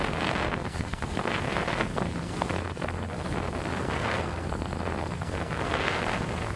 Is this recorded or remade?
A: remade